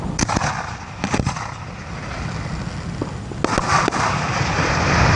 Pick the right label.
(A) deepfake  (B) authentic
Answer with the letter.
B